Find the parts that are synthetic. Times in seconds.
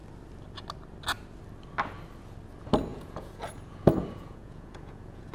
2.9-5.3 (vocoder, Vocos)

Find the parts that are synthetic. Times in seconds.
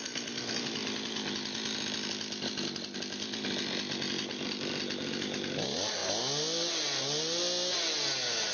none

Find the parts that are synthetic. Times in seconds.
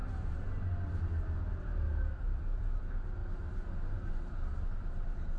none